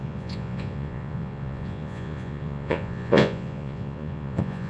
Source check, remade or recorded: remade